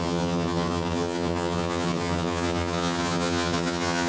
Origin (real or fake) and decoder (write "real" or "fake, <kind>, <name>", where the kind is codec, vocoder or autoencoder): fake, vocoder, HiFi-GAN